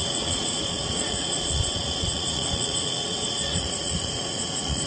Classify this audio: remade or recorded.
remade